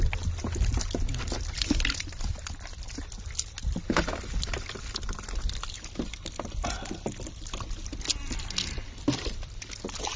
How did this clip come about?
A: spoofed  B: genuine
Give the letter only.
B